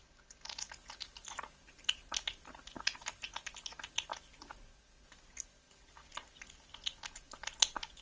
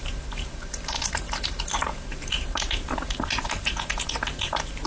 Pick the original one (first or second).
first